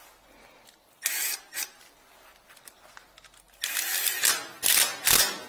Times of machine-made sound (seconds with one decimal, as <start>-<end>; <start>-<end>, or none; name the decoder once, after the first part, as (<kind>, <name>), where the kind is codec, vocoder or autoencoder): none